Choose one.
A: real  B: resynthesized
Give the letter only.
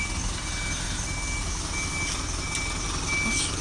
A